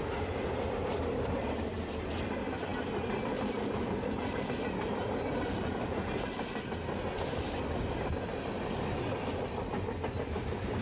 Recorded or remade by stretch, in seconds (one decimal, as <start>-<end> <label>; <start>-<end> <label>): 0.0-10.8 recorded